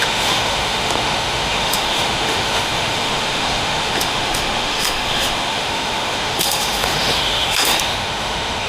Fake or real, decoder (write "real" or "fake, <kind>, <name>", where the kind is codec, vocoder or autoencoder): fake, autoencoder, DAC-VAE